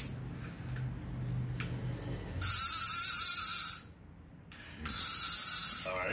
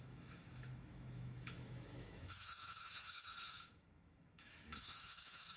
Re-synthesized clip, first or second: second